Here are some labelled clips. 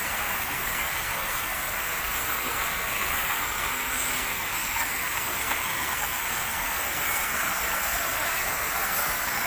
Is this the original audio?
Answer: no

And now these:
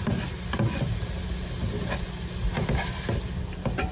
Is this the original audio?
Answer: yes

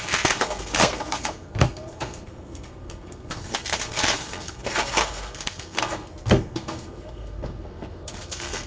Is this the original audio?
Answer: no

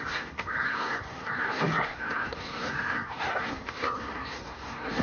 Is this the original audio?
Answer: no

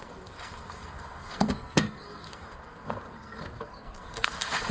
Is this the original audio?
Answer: no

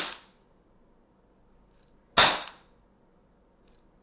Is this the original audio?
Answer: yes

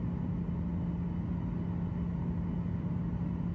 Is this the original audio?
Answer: yes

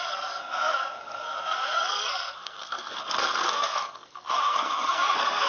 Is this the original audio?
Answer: no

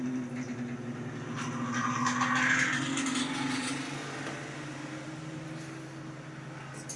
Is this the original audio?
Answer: yes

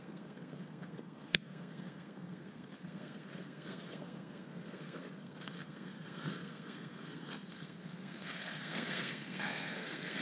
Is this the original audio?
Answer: no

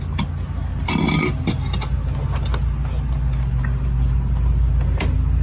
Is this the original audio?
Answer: yes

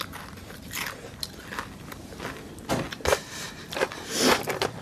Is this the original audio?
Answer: yes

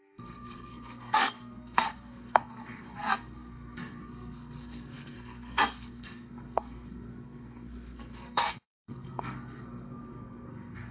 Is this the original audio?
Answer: no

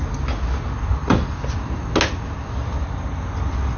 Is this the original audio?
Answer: yes